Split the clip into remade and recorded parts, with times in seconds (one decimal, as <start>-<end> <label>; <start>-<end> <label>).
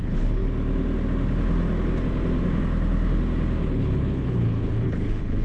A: 0.0-0.4 remade; 0.4-3.6 recorded; 3.6-5.4 remade